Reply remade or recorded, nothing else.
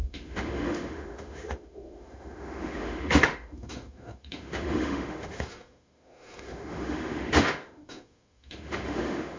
remade